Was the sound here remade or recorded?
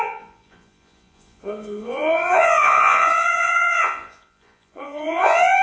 remade